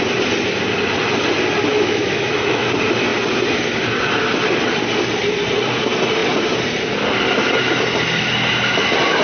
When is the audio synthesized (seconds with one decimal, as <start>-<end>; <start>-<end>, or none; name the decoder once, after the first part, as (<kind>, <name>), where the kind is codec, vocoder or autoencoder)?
1.7-2.7 (autoencoder, DAC-VAE)